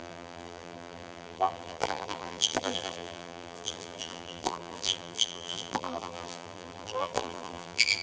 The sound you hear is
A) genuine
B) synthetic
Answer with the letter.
B